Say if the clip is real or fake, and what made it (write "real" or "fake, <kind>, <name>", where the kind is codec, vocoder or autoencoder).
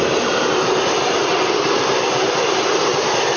real